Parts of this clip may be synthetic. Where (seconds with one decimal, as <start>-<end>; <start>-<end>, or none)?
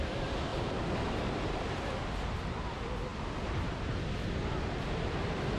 0.5-1.9; 3.1-4.0